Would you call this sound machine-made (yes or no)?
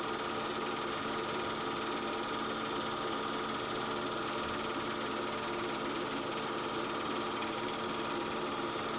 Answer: no